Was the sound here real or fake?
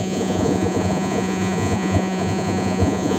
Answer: fake